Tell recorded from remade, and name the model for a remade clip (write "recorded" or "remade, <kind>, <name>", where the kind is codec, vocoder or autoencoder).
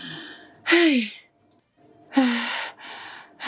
recorded